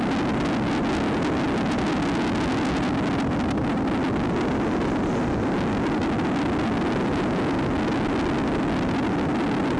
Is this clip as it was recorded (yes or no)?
yes